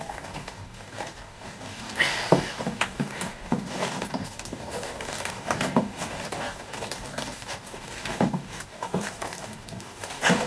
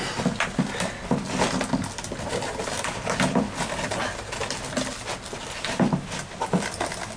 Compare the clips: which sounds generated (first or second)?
first